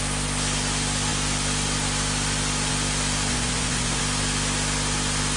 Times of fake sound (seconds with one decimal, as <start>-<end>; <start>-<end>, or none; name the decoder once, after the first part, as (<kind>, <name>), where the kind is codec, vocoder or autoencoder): 3.3-4.0 (vocoder, Vocos)